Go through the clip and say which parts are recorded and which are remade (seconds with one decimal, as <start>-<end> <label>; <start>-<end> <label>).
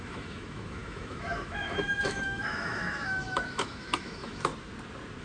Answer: 0.0-4.5 remade; 4.5-5.2 recorded